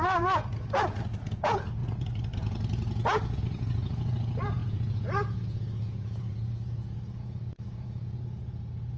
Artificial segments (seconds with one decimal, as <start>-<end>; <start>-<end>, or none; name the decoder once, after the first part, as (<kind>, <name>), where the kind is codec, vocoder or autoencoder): 0.0-9.0 (vocoder, Vocos)